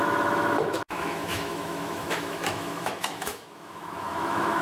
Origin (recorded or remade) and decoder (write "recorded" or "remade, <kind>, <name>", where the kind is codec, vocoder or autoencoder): remade, autoencoder, DAC-VAE